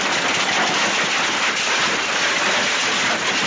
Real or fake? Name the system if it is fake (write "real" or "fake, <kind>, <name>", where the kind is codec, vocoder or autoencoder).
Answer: real